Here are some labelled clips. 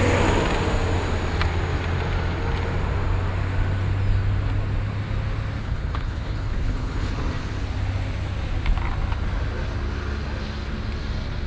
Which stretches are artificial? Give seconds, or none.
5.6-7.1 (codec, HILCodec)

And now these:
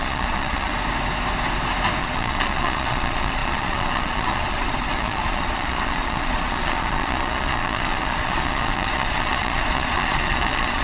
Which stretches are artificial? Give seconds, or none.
0.0-0.7 (vocoder, Vocos); 2.0-10.8

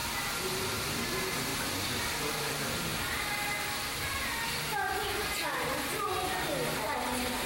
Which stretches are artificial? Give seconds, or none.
none

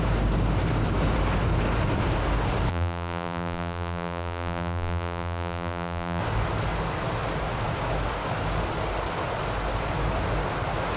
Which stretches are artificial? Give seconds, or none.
2.7-6.2 (vocoder, BigVGAN v2)